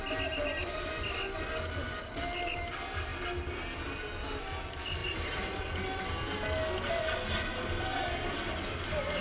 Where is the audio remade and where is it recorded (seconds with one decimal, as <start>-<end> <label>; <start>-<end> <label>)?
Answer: 0.0-5.0 recorded; 5.0-5.5 remade; 5.5-7.5 recorded; 7.5-9.2 remade